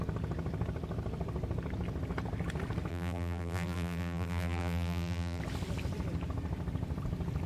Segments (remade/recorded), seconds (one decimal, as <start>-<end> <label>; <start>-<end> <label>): 0.0-2.9 recorded; 2.9-5.4 remade; 5.4-7.5 recorded